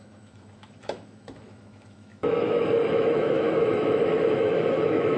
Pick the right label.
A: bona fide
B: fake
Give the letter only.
B